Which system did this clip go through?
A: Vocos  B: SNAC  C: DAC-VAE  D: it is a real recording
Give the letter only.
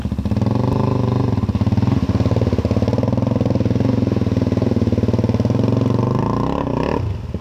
D